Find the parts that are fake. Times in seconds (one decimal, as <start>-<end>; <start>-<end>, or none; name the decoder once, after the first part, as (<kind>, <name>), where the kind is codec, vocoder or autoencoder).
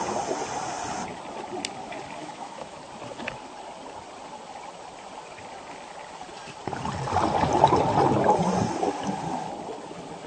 2.2-2.8 (autoencoder, DAC-VAE)